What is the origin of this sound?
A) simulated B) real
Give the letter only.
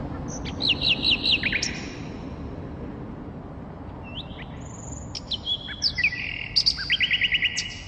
B